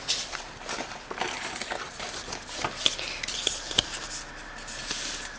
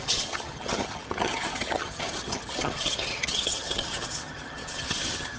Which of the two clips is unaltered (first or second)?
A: first